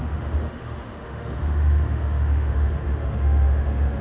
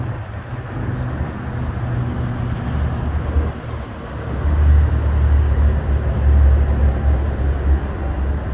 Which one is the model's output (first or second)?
first